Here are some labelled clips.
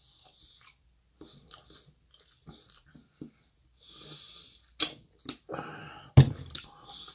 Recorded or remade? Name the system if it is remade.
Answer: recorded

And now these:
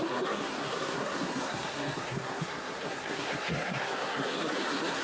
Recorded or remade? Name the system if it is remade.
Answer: remade, codec, SNAC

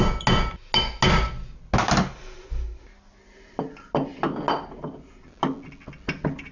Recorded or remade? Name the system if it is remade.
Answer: recorded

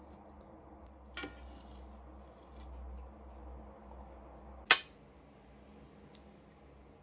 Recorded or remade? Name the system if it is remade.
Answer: recorded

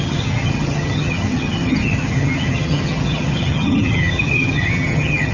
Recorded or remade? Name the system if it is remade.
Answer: remade, vocoder, HiFi-GAN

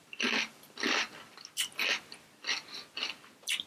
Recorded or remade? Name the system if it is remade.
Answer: recorded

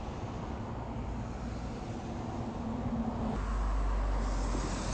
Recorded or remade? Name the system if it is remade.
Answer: recorded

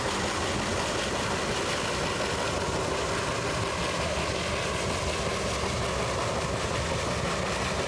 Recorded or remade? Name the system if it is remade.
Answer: recorded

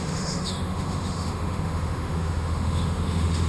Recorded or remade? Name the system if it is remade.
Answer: remade, autoencoder, DAC-VAE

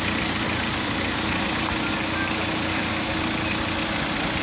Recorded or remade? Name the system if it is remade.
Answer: recorded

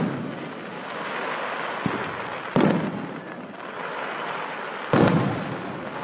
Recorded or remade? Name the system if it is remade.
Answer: recorded